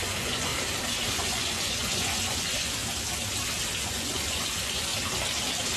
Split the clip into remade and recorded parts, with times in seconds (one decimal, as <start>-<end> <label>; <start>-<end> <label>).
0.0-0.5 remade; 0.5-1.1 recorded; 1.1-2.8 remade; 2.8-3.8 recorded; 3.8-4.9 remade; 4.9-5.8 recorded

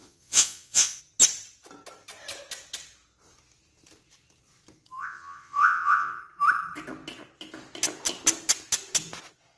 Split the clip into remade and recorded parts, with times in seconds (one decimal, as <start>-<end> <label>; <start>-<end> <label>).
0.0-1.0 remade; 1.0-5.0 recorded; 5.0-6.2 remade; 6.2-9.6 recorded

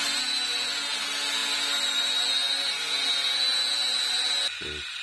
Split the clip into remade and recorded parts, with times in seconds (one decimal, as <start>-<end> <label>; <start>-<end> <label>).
0.0-5.0 recorded

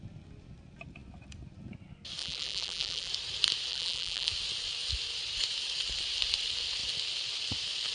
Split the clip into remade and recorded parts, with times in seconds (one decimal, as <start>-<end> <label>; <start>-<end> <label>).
0.0-2.2 recorded; 2.2-3.1 remade; 3.1-3.7 recorded; 3.7-4.3 remade; 4.3-7.9 recorded